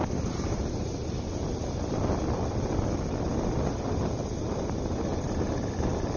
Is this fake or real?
real